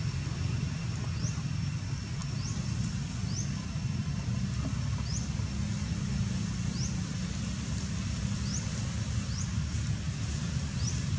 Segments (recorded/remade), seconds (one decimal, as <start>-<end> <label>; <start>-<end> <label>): 0.0-11.2 recorded